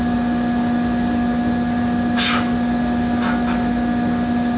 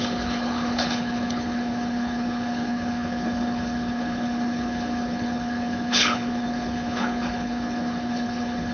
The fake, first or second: second